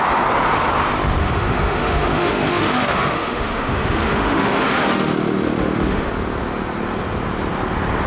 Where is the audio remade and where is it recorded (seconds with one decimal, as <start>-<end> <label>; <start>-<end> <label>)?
0.0-1.2 recorded; 1.2-6.1 remade; 6.1-8.1 recorded